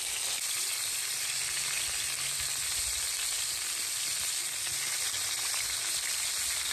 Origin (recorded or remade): recorded